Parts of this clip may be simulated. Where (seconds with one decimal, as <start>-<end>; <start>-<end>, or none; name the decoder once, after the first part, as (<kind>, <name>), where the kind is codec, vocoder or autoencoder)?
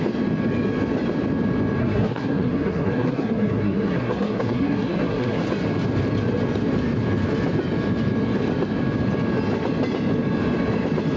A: 1.8-5.4 (codec, SNAC)